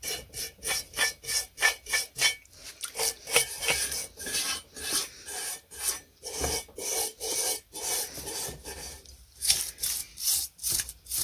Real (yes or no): yes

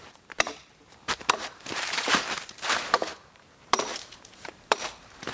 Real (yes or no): no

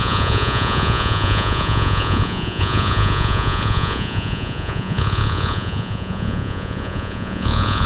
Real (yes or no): no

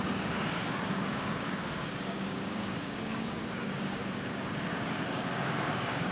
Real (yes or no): no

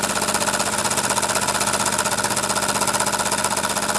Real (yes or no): yes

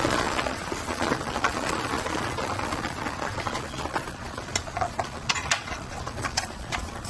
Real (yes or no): no